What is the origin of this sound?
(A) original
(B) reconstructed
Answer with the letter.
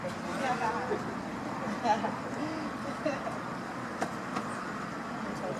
A